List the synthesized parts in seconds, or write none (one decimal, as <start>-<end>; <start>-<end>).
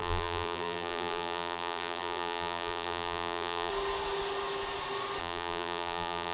0.0-3.7; 5.2-6.3